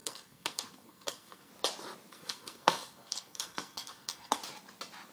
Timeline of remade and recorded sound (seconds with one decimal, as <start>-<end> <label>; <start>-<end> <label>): 0.0-1.5 remade; 1.5-2.1 recorded; 2.1-4.4 remade; 4.4-5.1 recorded